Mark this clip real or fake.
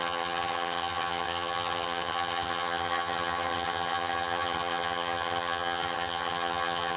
fake